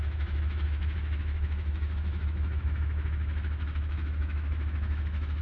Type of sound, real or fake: fake